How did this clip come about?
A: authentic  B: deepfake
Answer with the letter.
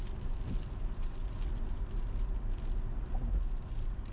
A